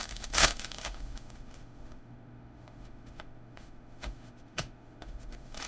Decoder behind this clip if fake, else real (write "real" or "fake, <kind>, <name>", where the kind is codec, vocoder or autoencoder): fake, autoencoder, DAC-VAE